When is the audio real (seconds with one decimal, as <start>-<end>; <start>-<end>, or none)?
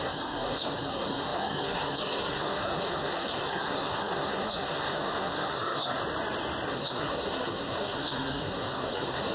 6.0-6.7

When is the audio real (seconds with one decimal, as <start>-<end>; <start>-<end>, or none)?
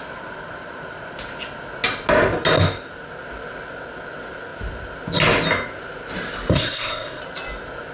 0.0-6.5; 7.2-7.9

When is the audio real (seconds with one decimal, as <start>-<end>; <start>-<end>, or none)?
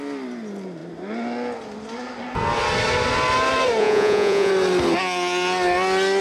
0.0-3.8; 4.5-6.2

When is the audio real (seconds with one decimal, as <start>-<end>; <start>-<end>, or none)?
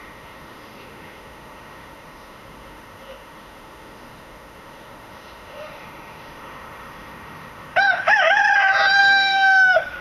8.4-9.0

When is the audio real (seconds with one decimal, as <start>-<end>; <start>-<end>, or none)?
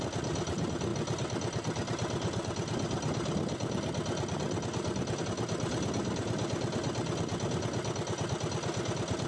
0.0-9.3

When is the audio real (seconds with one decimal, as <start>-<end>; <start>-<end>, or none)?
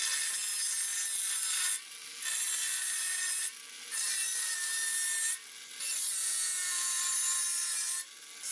0.0-6.2; 7.0-8.5